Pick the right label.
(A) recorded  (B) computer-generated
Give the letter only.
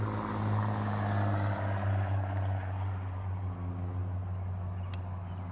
A